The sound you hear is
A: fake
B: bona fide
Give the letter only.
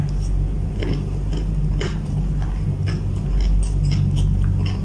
B